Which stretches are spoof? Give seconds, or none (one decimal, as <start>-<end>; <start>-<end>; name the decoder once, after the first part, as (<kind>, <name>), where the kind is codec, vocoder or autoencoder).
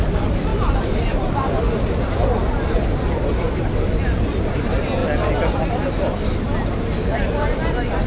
0.5-4.2 (vocoder, BigVGAN v2)